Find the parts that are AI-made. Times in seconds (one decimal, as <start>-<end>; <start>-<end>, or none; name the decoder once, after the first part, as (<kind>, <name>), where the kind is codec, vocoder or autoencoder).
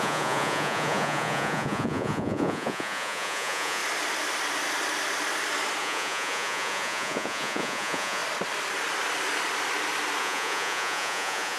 0.0-3.8 (vocoder, Vocos); 5.8-8.2; 10.2-11.6